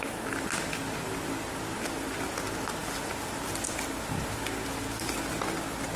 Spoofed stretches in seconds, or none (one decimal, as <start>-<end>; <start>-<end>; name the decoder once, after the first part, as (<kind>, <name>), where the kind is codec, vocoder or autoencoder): none